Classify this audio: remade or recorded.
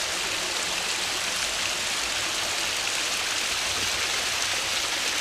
recorded